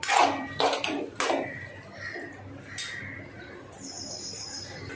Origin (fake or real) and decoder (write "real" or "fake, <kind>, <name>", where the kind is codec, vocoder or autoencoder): fake, vocoder, BigVGAN v2